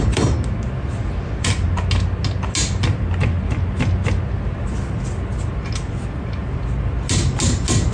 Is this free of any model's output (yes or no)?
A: yes